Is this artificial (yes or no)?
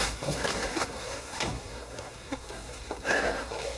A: yes